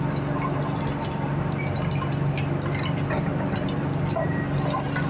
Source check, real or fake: real